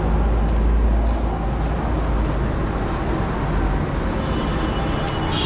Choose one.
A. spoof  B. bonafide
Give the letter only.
B